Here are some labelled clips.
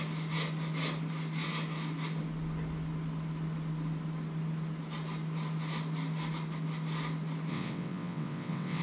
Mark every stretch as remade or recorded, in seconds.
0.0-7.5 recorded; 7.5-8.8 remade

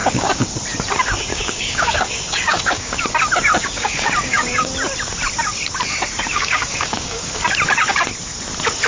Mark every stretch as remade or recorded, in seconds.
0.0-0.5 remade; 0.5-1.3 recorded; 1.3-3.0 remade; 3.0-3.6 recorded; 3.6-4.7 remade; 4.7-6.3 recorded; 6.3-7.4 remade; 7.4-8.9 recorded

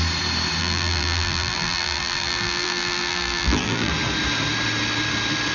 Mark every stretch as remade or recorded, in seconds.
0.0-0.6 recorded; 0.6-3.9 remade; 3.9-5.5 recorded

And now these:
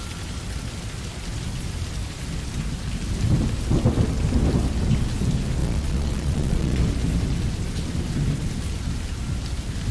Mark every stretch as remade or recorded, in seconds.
0.0-5.6 recorded; 5.6-6.8 remade; 6.8-9.9 recorded

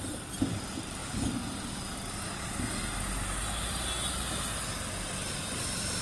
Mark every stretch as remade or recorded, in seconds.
0.0-6.0 recorded

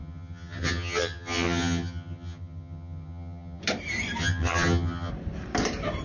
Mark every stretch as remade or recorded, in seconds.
0.0-3.6 remade; 3.6-4.2 recorded; 4.2-5.1 remade; 5.1-6.0 recorded